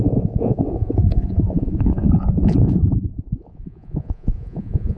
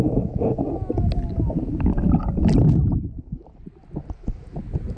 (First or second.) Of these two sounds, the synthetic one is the first